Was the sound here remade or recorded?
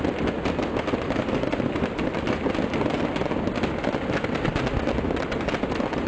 recorded